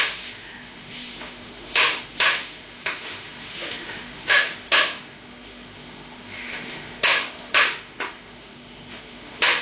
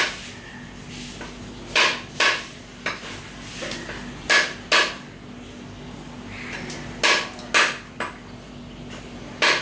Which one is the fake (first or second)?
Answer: first